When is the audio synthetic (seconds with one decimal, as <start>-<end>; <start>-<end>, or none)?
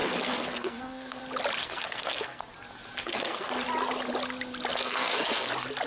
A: 0.0-1.2; 1.6-2.4; 3.0-3.5; 4.7-5.5